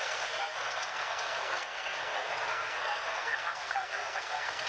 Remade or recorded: remade